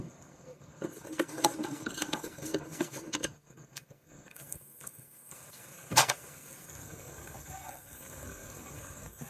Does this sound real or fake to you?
fake